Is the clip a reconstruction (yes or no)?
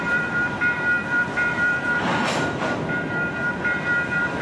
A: yes